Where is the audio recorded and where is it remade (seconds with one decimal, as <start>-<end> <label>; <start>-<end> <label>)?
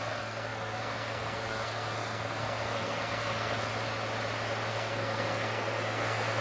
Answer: 0.0-3.7 remade; 3.7-4.7 recorded; 4.7-6.4 remade